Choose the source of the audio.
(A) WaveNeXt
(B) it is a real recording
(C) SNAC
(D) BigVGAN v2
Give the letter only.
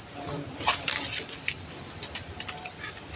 B